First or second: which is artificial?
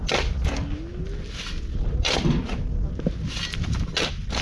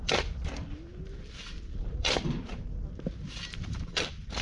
second